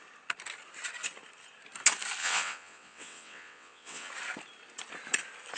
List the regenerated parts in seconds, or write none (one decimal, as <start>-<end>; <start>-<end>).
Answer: 2.2-4.1